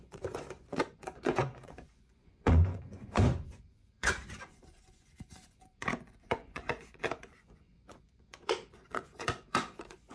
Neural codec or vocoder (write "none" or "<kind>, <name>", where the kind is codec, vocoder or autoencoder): vocoder, Vocos